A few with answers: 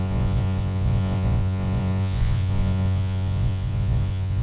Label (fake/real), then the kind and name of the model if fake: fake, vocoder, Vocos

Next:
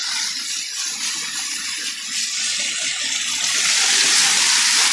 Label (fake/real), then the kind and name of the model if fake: real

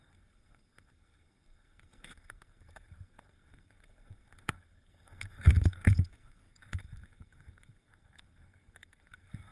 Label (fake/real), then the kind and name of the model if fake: fake, codec, SNAC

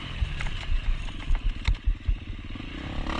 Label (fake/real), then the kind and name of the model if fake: real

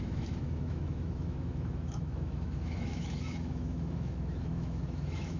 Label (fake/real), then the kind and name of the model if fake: fake, autoencoder, DAC-VAE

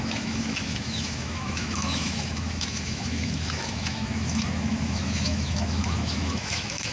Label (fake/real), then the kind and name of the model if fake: fake, autoencoder, DAC-VAE